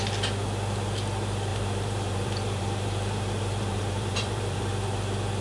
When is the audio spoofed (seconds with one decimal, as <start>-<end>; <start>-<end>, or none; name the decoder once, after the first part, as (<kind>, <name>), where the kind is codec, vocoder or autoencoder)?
1.5-4.7 (vocoder, BigVGAN v2)